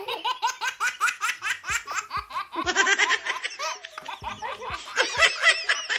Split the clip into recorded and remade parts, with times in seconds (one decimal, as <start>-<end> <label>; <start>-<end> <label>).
0.0-4.4 recorded; 4.4-5.3 remade; 5.3-6.0 recorded